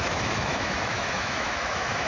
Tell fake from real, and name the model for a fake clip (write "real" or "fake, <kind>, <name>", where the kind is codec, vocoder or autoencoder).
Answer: fake, autoencoder, DAC-VAE